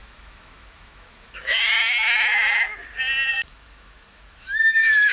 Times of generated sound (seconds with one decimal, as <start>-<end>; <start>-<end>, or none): 0.0-1.6; 3.3-5.1